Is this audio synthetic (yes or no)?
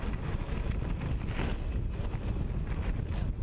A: no